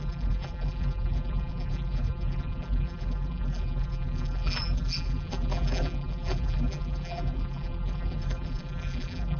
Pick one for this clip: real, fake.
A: fake